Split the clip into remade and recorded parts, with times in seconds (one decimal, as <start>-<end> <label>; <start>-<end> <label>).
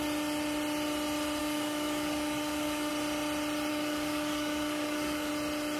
0.0-1.4 recorded; 1.4-2.9 remade; 2.9-3.7 recorded; 3.7-5.3 remade; 5.3-5.8 recorded